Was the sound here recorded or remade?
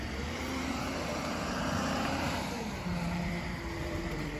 remade